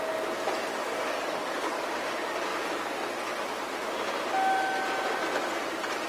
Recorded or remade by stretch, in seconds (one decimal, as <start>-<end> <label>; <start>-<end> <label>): 0.0-0.7 recorded; 0.7-1.8 remade; 1.8-6.1 recorded